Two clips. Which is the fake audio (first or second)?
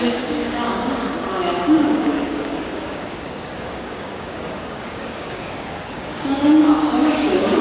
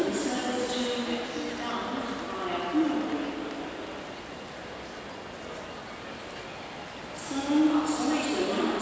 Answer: first